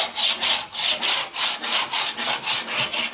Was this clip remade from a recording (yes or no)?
no